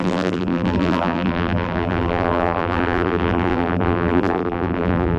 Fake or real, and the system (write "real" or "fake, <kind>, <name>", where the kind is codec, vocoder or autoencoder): fake, vocoder, BigVGAN v2